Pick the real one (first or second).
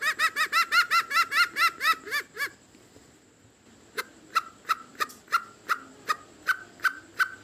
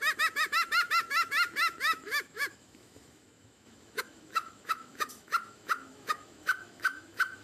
first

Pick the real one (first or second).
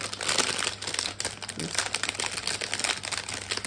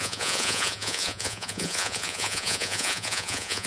first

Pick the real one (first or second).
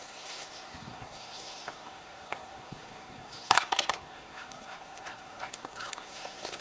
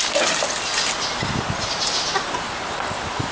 second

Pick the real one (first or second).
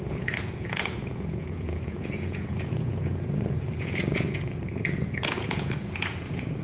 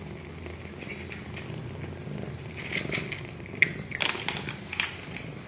second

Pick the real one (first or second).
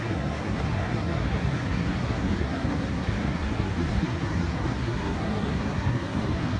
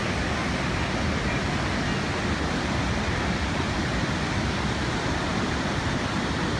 second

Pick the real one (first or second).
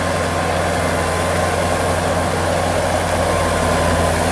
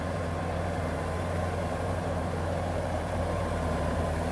first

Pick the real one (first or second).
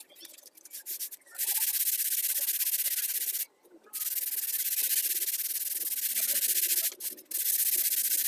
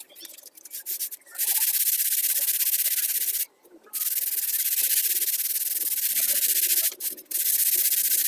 first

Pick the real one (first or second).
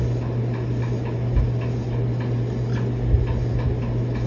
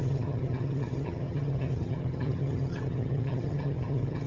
first